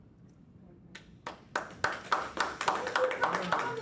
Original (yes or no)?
yes